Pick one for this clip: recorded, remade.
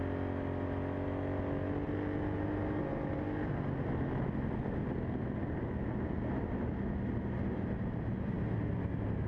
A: recorded